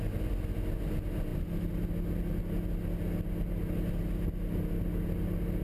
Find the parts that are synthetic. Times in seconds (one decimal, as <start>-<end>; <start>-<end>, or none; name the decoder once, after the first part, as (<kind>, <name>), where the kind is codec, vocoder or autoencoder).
none